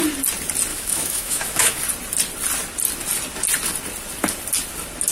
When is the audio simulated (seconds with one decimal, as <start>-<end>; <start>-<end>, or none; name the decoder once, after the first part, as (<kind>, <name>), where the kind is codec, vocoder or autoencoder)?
0.7-1.8 (autoencoder, DAC-VAE)